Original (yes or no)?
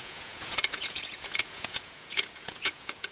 no